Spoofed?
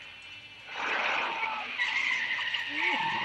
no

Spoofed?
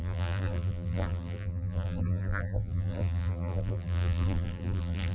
yes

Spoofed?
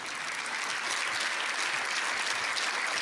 no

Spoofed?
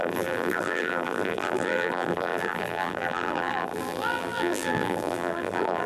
yes